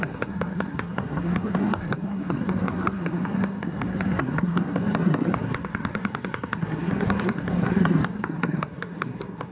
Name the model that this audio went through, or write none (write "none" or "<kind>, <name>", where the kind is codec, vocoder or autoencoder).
codec, SNAC